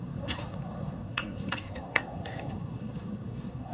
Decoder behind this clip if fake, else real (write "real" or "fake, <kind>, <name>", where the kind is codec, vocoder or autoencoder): fake, codec, SNAC